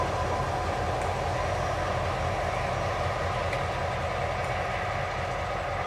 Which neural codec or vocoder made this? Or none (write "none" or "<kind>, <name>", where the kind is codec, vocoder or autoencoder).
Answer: none